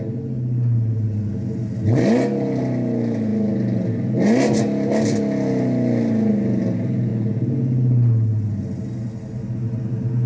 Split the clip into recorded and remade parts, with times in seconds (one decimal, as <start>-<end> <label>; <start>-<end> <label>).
0.0-10.3 recorded